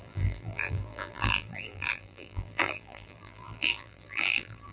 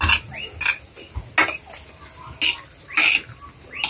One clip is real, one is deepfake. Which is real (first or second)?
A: second